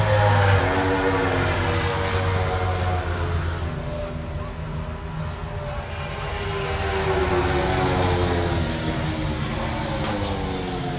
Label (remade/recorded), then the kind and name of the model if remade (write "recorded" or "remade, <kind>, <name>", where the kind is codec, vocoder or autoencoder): recorded